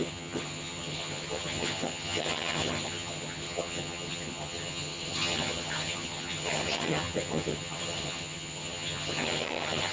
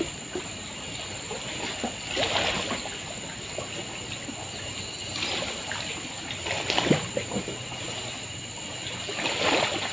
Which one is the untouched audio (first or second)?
second